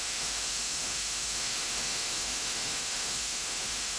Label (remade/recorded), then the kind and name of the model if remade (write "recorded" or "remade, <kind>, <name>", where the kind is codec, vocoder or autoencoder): remade, autoencoder, DAC-VAE